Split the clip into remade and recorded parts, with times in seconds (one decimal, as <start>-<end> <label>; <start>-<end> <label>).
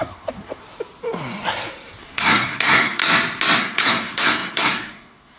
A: 0.0-0.6 remade; 0.6-2.0 recorded; 2.0-3.0 remade; 3.0-3.6 recorded; 3.6-5.4 remade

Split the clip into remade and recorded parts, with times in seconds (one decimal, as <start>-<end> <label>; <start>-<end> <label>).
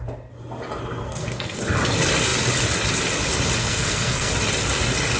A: 0.0-1.0 recorded; 1.0-1.6 remade; 1.6-3.6 recorded; 3.6-4.3 remade; 4.3-5.2 recorded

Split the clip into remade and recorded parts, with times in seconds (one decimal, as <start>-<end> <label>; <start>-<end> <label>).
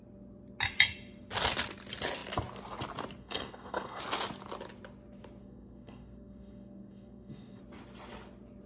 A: 0.0-3.2 recorded; 3.2-4.0 remade; 4.0-5.4 recorded; 5.4-7.6 remade; 7.6-8.7 recorded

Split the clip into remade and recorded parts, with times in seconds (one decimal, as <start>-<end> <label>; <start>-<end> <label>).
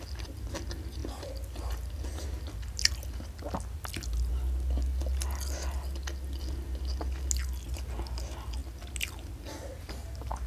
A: 0.0-10.5 recorded